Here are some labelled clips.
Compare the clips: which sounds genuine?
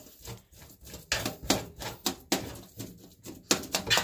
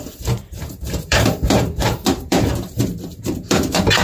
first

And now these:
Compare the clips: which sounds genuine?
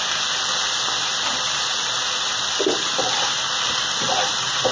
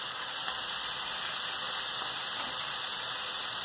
second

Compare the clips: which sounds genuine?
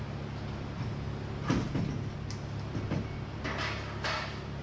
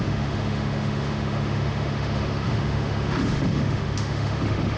first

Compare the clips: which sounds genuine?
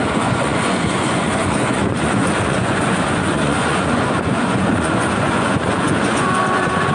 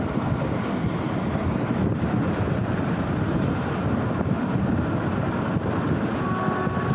second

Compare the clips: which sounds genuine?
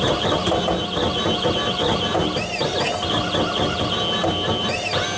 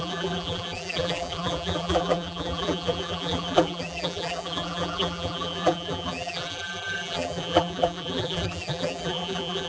first